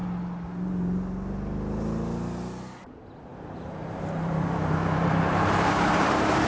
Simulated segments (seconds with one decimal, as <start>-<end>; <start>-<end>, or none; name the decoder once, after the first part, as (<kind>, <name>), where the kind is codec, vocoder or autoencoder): 3.3-6.5 (vocoder, BigVGAN v2)